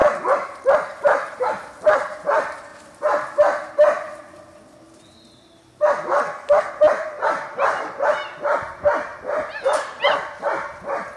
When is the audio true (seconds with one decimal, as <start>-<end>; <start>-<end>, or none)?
0.0-1.2; 2.7-6.6